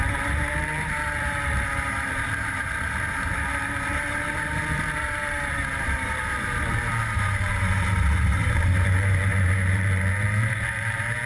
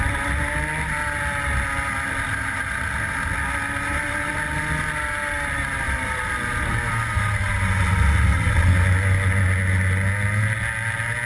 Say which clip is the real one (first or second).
second